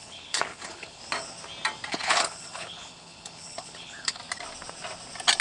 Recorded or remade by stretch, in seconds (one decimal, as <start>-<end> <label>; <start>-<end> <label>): 0.0-1.0 remade; 1.0-1.9 recorded; 1.9-4.2 remade; 4.2-5.4 recorded